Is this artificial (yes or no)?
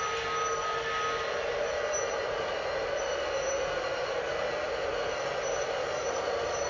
no